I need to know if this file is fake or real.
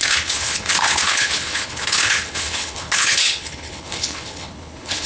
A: fake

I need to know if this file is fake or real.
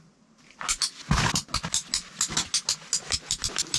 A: real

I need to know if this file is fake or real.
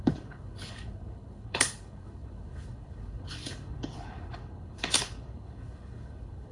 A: fake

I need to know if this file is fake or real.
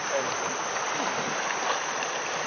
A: real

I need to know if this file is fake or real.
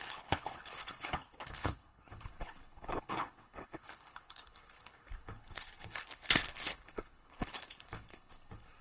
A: fake